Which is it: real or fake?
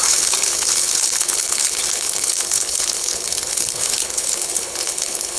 fake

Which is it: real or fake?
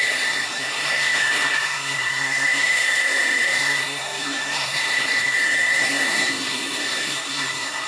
fake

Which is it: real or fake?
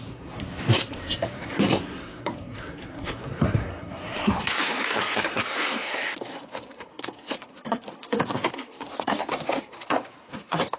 fake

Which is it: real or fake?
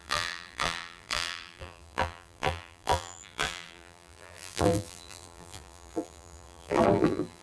fake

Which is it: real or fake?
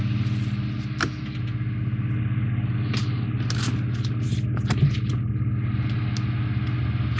real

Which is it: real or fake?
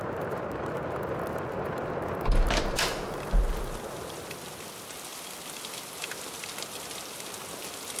real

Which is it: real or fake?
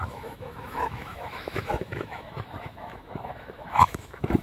fake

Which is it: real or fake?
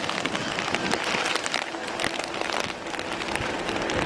real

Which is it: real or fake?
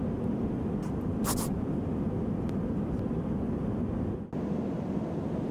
real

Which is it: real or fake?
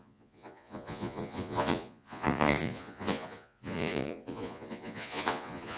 fake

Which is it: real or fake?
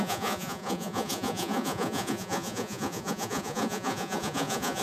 fake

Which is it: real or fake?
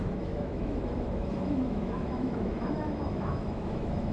fake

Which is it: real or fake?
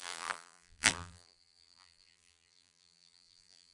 fake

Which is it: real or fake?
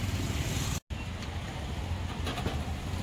real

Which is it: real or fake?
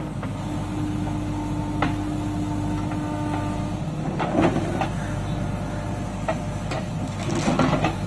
real